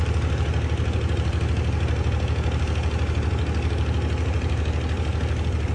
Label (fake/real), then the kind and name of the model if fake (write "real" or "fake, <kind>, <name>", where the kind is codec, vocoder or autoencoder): real